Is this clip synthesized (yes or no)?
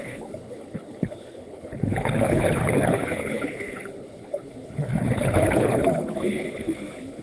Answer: yes